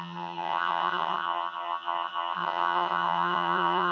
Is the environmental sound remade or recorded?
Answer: remade